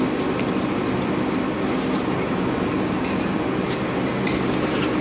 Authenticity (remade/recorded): recorded